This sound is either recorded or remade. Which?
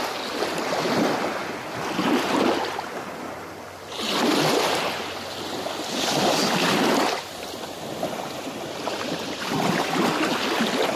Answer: recorded